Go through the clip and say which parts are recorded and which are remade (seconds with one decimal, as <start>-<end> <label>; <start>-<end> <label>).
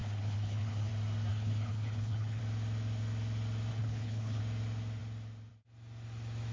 0.0-0.9 remade; 0.9-1.3 recorded; 1.3-2.4 remade; 2.4-3.7 recorded; 3.7-4.4 remade; 4.4-6.5 recorded